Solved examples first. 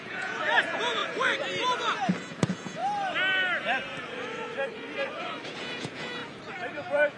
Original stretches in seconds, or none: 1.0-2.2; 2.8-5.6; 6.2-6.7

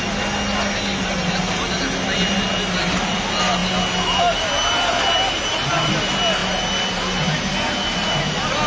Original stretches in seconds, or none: 0.0-8.7

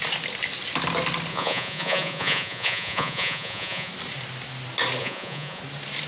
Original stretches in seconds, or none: 0.0-1.3; 3.9-5.0; 5.6-6.1

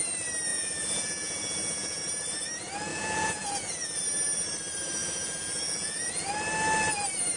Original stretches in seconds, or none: 0.0-0.5; 2.0-2.9; 4.0-5.0; 6.3-7.4

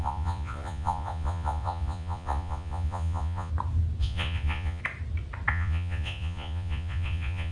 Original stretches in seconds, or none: 3.5-4.0; 4.8-5.5

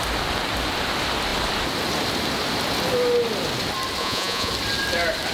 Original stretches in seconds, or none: 0.0-4.0; 4.5-5.3

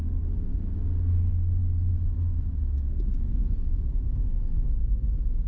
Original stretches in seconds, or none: 0.0-5.5